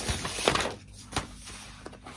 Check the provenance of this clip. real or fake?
real